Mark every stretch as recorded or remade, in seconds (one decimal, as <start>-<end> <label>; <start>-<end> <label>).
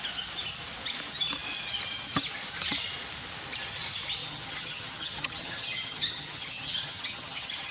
0.0-4.2 recorded; 4.2-7.7 remade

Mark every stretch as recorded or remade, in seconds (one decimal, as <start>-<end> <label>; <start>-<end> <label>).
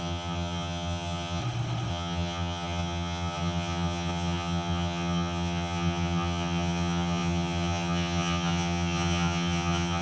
0.0-1.4 remade; 1.4-1.9 recorded; 1.9-10.0 remade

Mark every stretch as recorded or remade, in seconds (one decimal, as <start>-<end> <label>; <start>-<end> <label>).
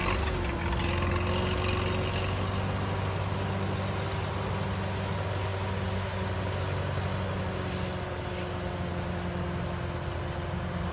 0.0-10.9 recorded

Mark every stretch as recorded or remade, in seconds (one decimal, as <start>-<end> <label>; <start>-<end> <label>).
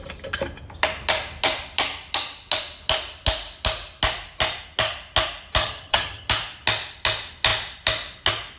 0.0-5.6 recorded; 5.6-6.3 remade; 6.3-8.6 recorded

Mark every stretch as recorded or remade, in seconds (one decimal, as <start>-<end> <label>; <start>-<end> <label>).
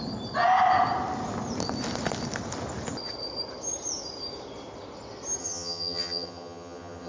0.0-5.4 recorded; 5.4-7.1 remade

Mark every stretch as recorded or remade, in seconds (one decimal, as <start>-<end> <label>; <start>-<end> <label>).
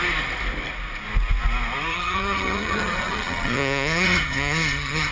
0.0-1.9 recorded; 1.9-5.1 remade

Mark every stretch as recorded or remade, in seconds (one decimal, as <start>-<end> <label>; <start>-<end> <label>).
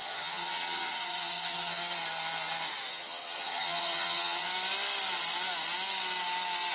0.0-1.8 remade; 1.8-2.9 recorded; 2.9-4.5 remade; 4.5-6.7 recorded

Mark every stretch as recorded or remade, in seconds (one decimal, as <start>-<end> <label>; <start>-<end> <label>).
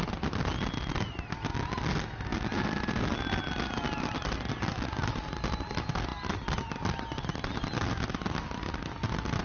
0.0-9.4 recorded